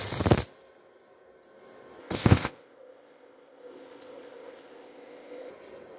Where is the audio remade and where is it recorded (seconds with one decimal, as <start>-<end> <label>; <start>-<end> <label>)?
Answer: 0.0-2.0 recorded; 2.0-5.5 remade; 5.5-6.0 recorded